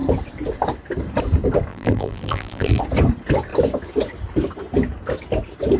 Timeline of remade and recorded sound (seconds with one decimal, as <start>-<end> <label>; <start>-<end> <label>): 0.0-1.7 recorded; 1.7-2.8 remade; 2.8-5.8 recorded